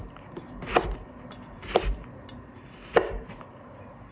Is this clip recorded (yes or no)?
yes